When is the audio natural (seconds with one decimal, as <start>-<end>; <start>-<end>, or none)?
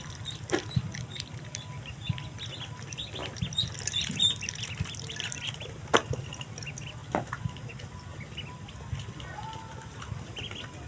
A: 0.0-10.9